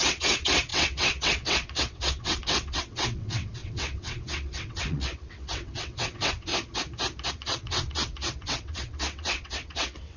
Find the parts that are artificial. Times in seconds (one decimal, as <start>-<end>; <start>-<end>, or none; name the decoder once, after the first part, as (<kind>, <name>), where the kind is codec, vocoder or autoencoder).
0.0-6.5 (vocoder, WaveNeXt); 7.3-10.2